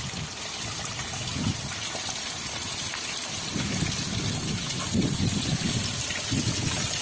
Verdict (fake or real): real